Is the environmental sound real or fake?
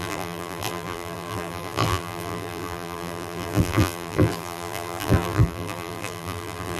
fake